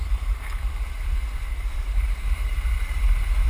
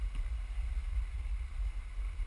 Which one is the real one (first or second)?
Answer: second